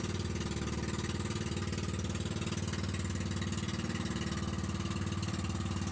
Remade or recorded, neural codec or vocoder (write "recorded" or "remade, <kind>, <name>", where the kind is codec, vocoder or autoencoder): recorded